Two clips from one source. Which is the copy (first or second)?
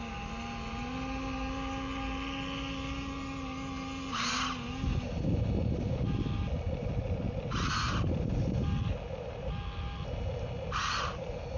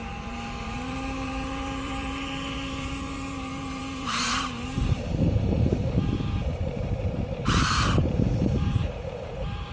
second